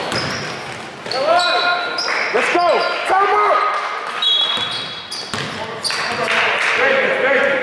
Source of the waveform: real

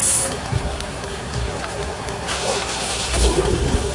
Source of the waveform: fake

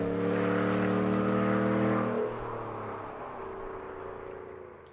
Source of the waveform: real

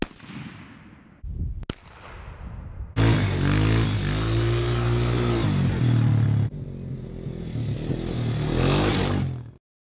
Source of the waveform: real